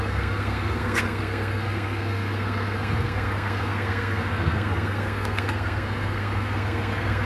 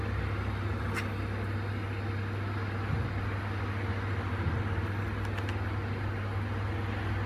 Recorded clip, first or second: second